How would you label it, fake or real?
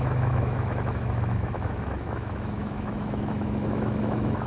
fake